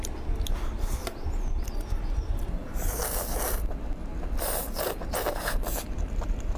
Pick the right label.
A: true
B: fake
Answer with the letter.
A